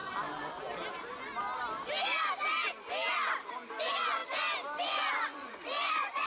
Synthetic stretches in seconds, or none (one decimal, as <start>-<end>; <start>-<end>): 3.8-4.2; 4.8-6.3